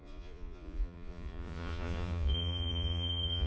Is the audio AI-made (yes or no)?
yes